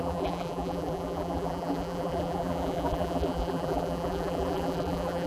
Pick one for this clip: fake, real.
fake